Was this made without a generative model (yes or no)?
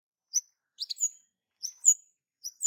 no